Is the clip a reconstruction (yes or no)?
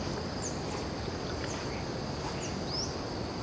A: no